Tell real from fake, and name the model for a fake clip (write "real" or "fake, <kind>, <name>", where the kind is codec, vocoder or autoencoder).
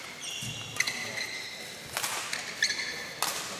real